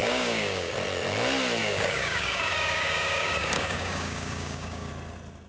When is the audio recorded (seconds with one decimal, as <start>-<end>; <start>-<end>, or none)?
0.7-1.6; 4.9-5.5